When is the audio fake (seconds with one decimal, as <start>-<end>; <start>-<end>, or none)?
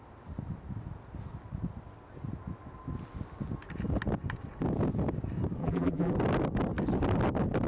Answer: 5.6-6.1